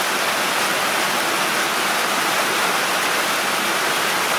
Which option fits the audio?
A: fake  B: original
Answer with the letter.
B